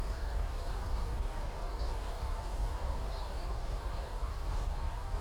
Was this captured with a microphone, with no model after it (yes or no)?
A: no